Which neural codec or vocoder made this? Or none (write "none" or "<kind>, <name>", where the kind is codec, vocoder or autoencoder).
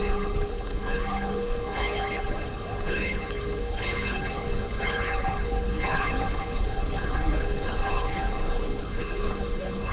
codec, HILCodec